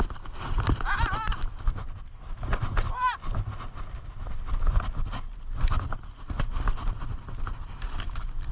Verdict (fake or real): real